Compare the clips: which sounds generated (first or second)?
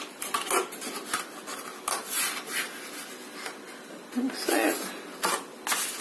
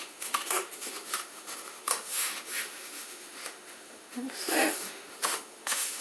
second